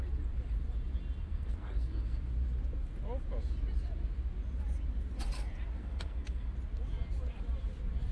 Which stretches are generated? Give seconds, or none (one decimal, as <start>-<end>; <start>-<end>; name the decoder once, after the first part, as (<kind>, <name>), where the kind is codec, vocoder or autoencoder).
1.2-2.2 (codec, SNAC); 5.8-6.5